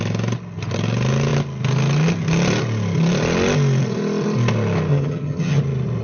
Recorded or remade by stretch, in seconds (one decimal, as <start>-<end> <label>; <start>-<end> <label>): 0.0-4.9 recorded; 4.9-5.6 remade; 5.6-6.0 recorded